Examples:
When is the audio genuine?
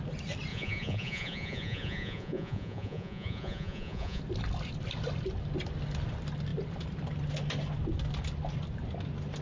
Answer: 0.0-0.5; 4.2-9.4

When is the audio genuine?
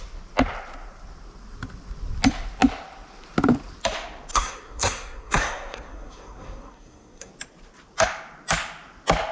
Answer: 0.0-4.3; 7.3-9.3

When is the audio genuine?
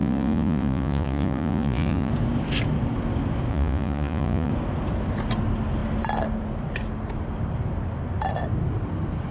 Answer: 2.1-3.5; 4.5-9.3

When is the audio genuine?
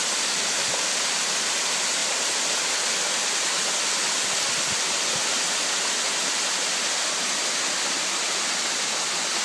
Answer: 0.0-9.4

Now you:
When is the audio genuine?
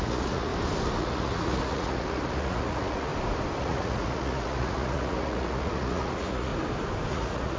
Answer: 0.5-1.0; 3.1-3.6; 6.5-7.1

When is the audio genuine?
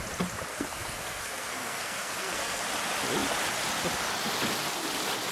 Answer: 0.0-0.5; 2.6-5.3